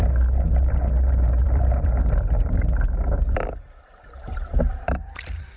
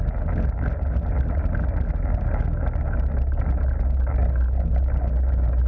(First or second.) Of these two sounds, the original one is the second